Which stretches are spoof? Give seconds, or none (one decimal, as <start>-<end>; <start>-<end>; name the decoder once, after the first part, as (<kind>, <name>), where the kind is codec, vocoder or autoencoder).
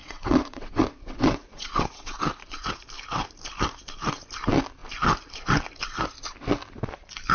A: 0.0-2.2 (vocoder, WaveNeXt)